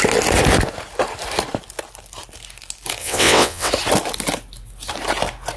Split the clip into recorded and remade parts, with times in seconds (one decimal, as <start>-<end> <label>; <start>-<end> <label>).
0.0-3.0 recorded; 3.0-3.7 remade; 3.7-5.6 recorded